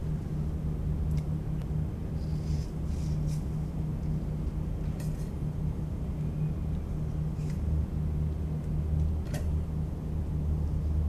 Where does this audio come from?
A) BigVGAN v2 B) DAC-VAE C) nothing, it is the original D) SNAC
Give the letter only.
C